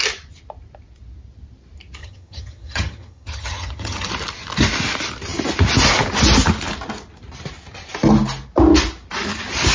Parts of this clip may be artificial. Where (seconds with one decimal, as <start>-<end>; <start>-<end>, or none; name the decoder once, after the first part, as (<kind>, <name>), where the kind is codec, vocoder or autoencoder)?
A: 2.0-4.1 (vocoder, HiFi-GAN)